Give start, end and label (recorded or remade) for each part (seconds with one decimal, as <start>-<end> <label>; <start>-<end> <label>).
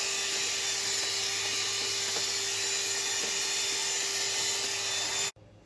0.0-5.7 recorded